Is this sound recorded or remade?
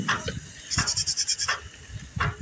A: recorded